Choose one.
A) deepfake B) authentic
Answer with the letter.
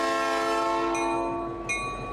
B